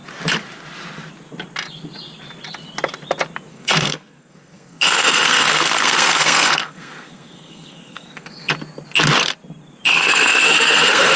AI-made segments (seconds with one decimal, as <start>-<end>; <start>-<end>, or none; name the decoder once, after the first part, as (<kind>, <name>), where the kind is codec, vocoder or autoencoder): 3.5-8.5 (codec, SNAC); 9.9-11.2